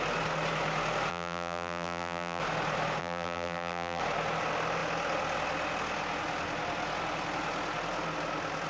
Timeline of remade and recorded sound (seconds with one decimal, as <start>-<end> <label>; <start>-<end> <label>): 0.0-1.1 recorded; 1.1-2.4 remade; 2.4-3.0 recorded; 3.0-4.0 remade; 4.0-8.7 recorded